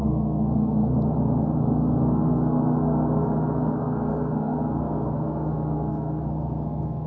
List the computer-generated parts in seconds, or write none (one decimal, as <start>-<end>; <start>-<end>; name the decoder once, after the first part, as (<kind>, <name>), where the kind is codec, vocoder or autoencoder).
0.0-0.9 (codec, SNAC); 1.6-7.1